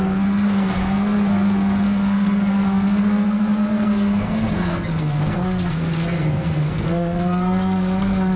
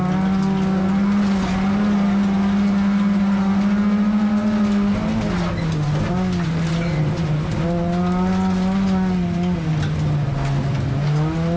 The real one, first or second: second